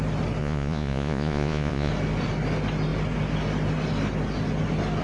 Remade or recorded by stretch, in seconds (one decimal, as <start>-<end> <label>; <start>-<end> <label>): 0.0-0.4 recorded; 0.4-1.9 remade; 1.9-5.0 recorded